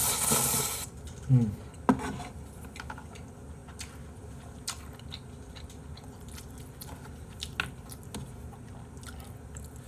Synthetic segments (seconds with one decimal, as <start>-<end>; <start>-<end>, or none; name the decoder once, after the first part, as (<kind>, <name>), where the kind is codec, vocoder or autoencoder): none